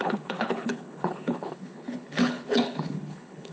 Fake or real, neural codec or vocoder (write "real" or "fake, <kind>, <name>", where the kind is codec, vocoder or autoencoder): fake, codec, HILCodec